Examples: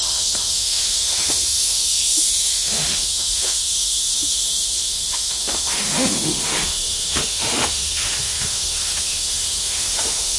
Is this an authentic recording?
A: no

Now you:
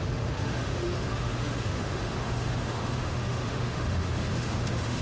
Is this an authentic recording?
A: no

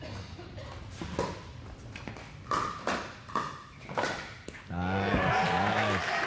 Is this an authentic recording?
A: yes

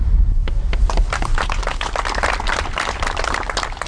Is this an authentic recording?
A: yes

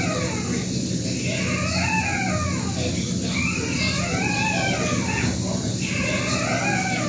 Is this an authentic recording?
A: yes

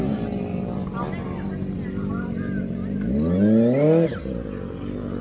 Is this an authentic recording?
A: yes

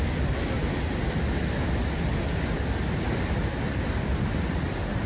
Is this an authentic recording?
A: yes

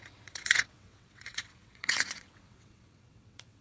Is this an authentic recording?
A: no